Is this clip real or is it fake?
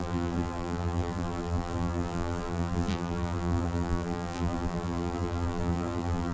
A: fake